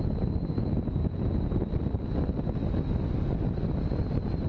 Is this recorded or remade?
recorded